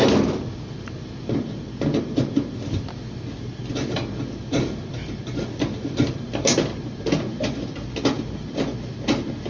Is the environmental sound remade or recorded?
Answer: recorded